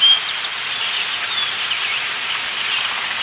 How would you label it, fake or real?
real